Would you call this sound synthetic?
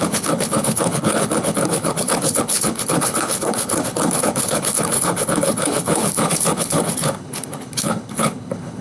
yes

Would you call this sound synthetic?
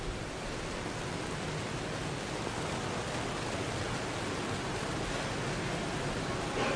no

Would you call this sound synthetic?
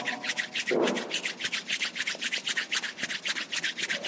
no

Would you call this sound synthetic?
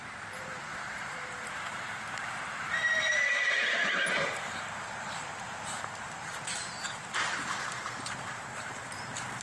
yes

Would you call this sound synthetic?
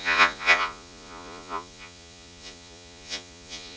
yes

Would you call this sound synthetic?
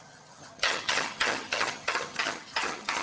yes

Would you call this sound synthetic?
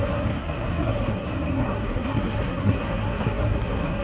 yes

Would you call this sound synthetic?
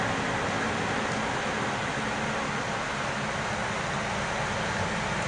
no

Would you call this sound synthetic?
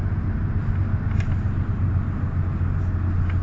no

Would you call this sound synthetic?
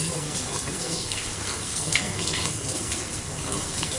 yes